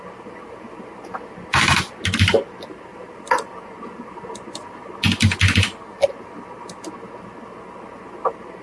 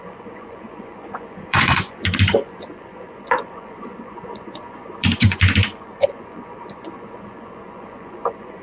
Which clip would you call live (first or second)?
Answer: first